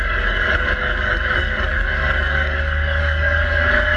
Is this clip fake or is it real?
fake